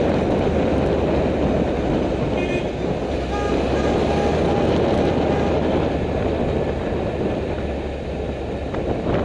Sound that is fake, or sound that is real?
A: real